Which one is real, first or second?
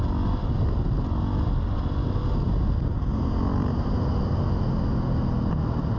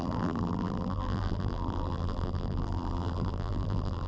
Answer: first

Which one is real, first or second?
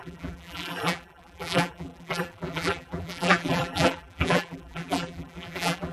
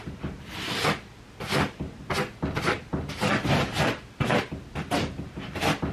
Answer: second